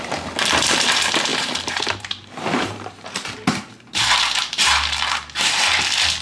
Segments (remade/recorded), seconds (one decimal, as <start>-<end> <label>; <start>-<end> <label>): 0.0-1.3 recorded; 1.3-4.6 remade; 4.6-6.2 recorded